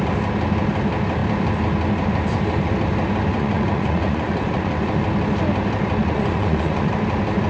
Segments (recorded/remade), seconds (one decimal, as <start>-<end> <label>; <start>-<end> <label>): 0.0-3.3 recorded; 3.3-5.0 remade; 5.0-6.0 recorded; 6.0-6.9 remade; 6.9-7.5 recorded